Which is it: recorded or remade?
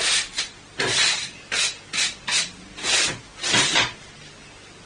recorded